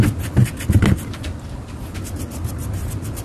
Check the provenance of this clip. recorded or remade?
recorded